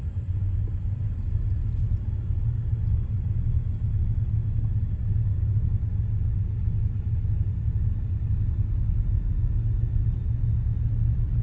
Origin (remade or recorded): recorded